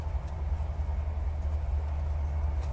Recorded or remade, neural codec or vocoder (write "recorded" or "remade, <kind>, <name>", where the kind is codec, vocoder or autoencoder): recorded